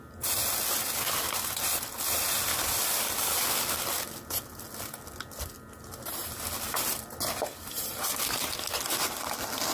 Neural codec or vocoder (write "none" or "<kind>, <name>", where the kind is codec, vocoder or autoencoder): none